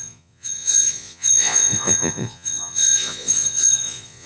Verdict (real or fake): fake